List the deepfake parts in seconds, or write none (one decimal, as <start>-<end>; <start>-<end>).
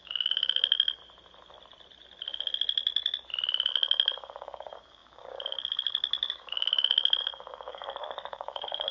0.0-1.0; 3.7-8.9